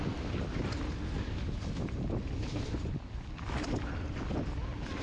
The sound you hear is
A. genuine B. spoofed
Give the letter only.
A